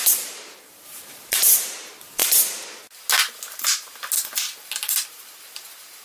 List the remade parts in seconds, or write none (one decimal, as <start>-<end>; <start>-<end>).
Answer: 0.0-2.2; 5.1-6.0